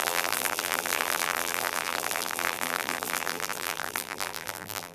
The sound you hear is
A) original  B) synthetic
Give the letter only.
B